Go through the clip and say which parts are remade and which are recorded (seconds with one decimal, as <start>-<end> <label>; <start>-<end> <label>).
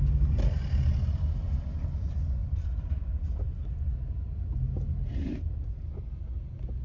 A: 0.0-2.4 recorded; 2.4-3.2 remade; 3.2-5.1 recorded; 5.1-5.8 remade; 5.8-6.8 recorded